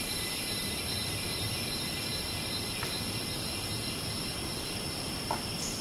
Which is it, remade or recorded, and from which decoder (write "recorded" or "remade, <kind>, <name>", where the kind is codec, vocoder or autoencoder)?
remade, vocoder, BigVGAN v2